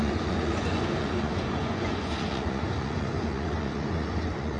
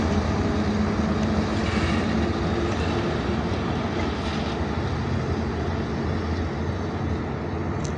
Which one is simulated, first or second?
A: first